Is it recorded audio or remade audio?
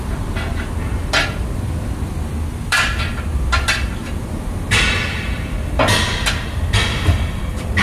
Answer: remade